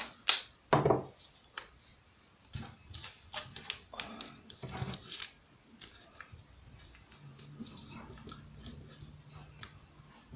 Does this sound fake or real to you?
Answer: real